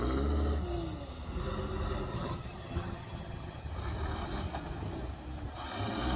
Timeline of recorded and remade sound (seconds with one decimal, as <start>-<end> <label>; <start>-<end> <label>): 0.0-2.1 recorded; 2.1-3.7 remade; 3.7-6.2 recorded